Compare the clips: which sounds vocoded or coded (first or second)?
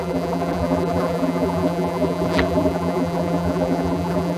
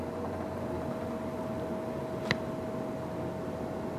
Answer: first